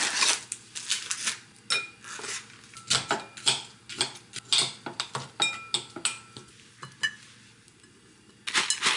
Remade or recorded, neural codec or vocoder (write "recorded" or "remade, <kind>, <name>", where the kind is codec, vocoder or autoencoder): recorded